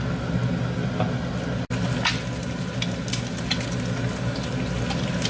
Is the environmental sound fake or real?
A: real